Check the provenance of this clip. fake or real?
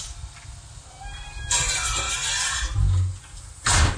real